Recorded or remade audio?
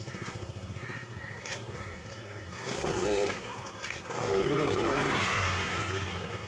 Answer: remade